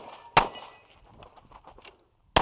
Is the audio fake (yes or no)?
no